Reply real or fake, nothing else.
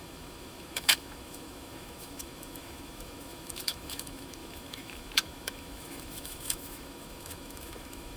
fake